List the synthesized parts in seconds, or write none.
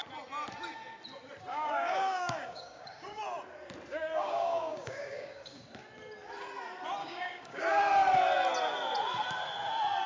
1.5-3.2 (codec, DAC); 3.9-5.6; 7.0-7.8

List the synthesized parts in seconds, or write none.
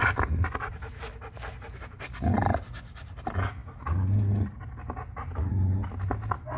none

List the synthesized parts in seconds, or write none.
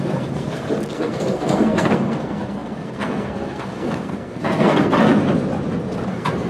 0.0-5.2 (codec, SNAC); 6.1-6.5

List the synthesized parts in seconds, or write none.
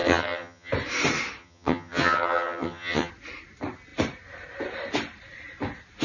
0.0-0.7 (vocoder, HiFi-GAN); 1.4-3.1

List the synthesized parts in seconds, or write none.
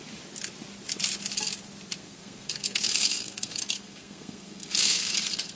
2.0-5.6 (codec, SNAC)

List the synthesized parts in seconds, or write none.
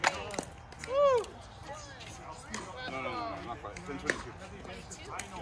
none